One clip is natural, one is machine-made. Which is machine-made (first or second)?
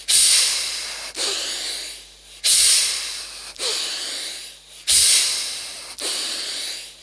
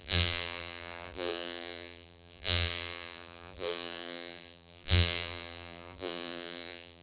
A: second